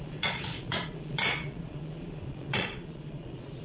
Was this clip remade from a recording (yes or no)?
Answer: yes